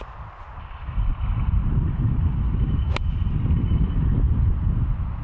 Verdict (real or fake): real